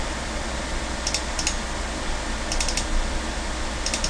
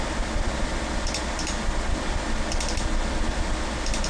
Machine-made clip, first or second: second